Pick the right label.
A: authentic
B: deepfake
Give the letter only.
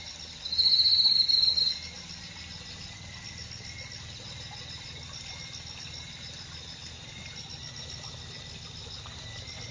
A